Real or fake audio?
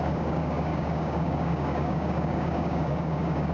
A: fake